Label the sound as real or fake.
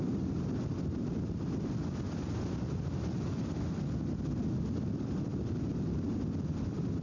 real